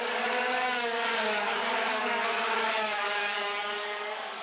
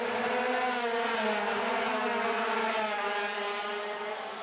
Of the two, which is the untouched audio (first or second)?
second